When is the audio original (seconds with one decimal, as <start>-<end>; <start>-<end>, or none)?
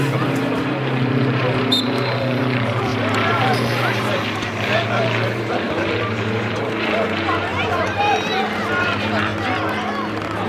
9.3-10.1